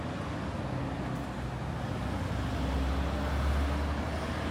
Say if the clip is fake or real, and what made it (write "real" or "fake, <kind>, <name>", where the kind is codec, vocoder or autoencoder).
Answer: real